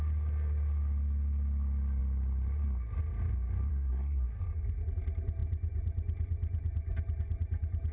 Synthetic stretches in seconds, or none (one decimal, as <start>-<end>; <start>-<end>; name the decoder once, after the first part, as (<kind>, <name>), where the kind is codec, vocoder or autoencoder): 3.7-4.4 (codec, SNAC)